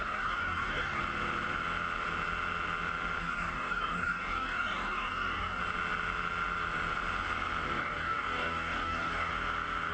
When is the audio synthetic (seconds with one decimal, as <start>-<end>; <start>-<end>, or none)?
0.0-1.0; 3.2-5.6; 7.8-9.3